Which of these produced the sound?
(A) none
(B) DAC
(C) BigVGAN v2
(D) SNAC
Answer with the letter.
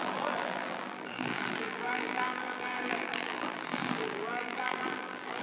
C